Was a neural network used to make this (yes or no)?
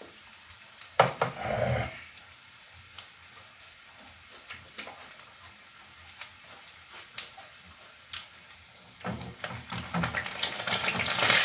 no